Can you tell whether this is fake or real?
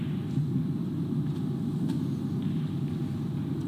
real